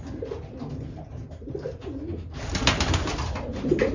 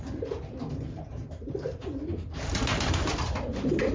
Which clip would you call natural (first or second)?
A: first